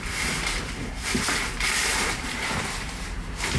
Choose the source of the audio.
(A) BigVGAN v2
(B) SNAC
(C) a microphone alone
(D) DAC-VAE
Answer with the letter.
A